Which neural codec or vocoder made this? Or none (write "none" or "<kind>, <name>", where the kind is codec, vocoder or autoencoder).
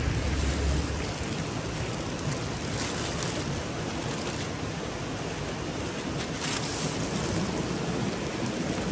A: none